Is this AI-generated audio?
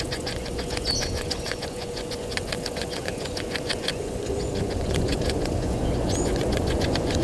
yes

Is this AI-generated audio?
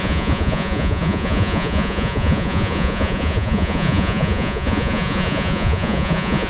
yes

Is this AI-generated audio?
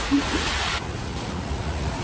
yes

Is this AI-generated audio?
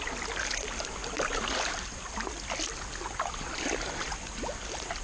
no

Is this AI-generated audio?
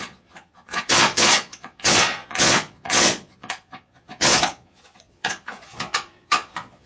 yes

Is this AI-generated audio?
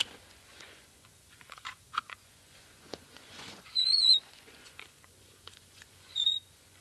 yes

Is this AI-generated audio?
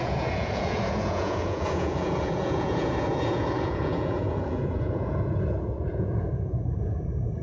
yes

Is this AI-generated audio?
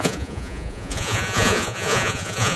yes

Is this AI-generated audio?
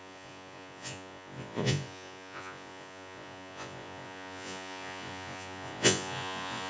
yes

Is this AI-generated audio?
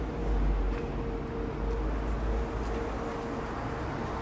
no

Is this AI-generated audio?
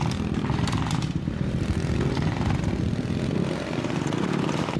no